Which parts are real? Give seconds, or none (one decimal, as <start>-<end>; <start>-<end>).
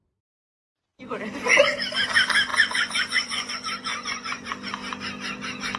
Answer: 0.0-2.5; 3.5-3.9; 4.5-5.8